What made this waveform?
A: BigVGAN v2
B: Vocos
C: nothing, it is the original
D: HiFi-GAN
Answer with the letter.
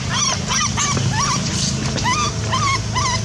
C